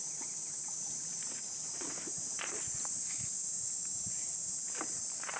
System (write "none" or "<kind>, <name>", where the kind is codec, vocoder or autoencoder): vocoder, BigVGAN v2